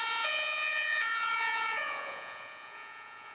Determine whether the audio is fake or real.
fake